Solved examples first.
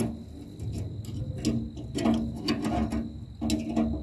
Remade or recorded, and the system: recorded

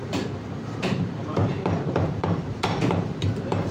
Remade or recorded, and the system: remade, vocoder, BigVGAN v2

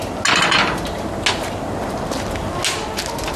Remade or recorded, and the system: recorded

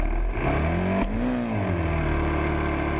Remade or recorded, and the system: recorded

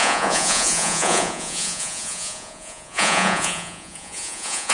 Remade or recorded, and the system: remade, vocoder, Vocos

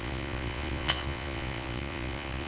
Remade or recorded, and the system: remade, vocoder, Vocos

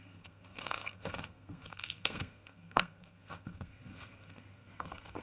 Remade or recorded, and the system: remade, codec, SNAC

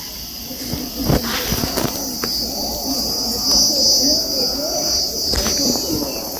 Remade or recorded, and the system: recorded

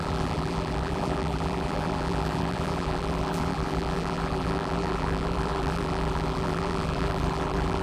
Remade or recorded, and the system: remade, vocoder, BigVGAN v2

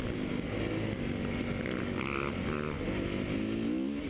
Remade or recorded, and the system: recorded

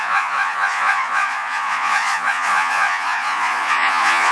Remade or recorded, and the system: remade, vocoder, Vocos